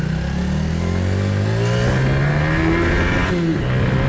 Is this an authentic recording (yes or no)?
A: yes